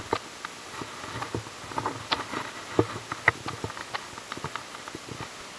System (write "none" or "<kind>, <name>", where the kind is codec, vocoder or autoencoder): none